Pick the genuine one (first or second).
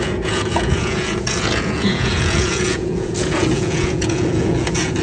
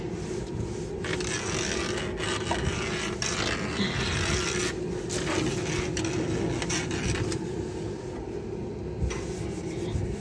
second